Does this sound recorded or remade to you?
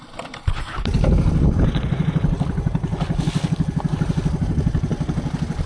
recorded